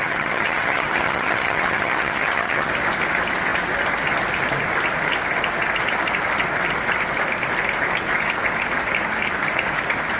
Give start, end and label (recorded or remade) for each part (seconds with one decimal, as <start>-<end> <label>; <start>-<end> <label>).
0.0-2.7 remade; 2.7-10.2 recorded